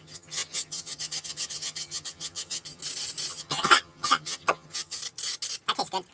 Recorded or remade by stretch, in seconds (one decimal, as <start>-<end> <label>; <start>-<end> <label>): 0.0-2.8 remade; 2.8-3.3 recorded; 3.3-5.0 remade; 5.0-6.1 recorded